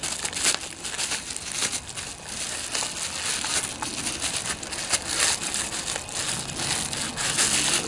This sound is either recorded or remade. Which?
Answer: recorded